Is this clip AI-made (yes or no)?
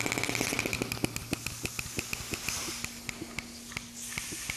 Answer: no